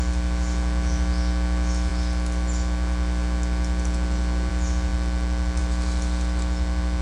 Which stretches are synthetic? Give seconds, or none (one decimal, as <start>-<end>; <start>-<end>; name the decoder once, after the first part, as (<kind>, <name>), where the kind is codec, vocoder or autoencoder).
none